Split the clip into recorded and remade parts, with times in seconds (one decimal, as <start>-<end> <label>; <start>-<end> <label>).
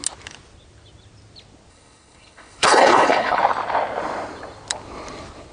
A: 0.0-1.7 recorded; 1.7-3.4 remade; 3.4-5.5 recorded